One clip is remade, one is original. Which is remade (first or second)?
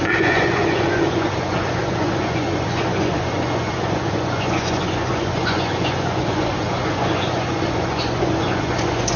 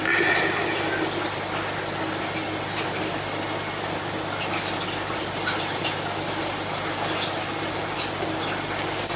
first